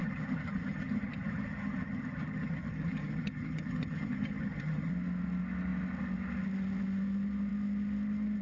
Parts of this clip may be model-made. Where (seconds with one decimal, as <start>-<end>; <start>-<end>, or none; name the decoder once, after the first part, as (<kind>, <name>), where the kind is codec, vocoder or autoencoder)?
0.0-4.9 (vocoder, HiFi-GAN)